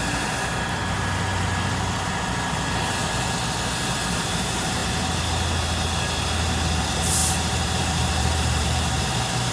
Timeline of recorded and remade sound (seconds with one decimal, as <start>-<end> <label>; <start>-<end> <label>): 0.0-0.8 remade; 0.8-4.1 recorded; 4.1-4.8 remade; 4.8-6.8 recorded; 6.8-9.5 remade